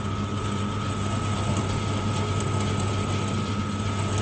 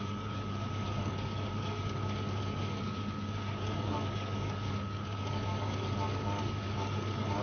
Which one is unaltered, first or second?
first